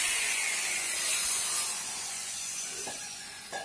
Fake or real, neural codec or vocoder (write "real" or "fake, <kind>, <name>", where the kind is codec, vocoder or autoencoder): fake, vocoder, Vocos